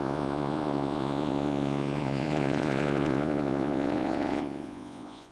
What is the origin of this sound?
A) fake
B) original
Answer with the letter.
A